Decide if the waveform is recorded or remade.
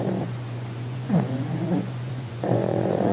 remade